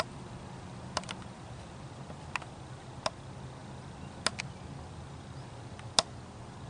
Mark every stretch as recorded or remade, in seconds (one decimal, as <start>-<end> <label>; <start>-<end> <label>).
0.0-6.7 recorded